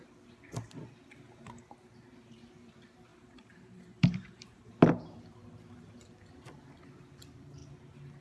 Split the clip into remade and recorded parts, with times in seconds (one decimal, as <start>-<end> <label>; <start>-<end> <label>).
0.0-3.1 recorded; 3.1-4.7 remade; 4.7-8.2 recorded